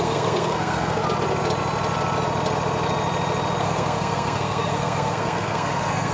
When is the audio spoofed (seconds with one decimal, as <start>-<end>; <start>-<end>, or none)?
0.0-1.0; 3.6-6.1